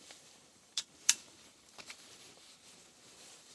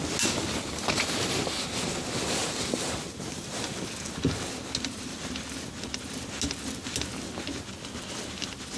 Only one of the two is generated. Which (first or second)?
first